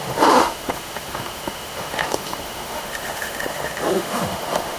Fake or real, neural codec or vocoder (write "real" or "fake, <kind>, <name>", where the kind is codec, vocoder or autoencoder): fake, autoencoder, DAC-VAE